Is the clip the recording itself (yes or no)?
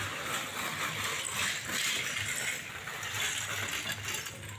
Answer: yes